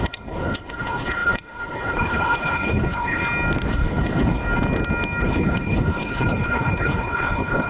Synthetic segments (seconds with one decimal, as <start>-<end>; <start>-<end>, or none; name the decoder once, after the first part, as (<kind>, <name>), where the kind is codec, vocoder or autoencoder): 0.0-3.2 (codec, HILCodec); 3.7-4.4; 5.2-7.7